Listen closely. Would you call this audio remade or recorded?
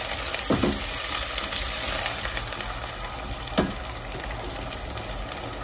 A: recorded